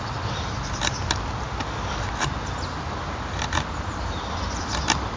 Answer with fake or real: real